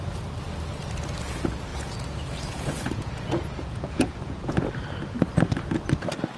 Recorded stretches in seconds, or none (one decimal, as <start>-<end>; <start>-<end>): 0.0-1.7; 4.6-6.4